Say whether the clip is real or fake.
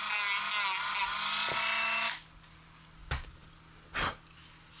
real